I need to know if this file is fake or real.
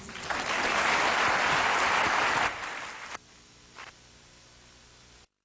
real